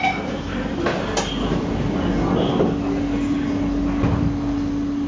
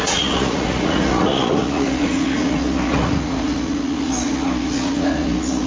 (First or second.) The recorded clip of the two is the first